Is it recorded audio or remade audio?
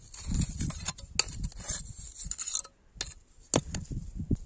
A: recorded